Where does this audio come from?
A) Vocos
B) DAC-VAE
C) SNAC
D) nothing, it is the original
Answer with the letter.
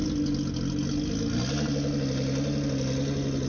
D